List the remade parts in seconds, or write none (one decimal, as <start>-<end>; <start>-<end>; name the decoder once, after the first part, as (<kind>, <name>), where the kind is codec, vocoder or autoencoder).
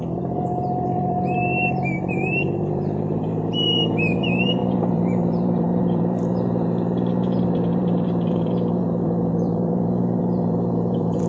0.0-11.3 (vocoder, BigVGAN v2)